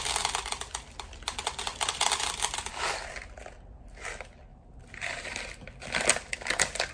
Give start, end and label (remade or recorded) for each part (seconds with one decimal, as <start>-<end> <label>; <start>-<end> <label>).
0.0-1.7 recorded; 1.7-3.9 remade; 3.9-4.5 recorded; 4.5-6.3 remade; 6.3-6.9 recorded